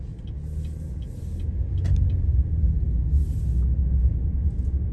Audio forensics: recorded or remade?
recorded